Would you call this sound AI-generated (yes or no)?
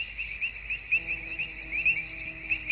no